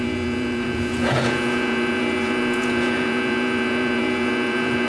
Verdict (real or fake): fake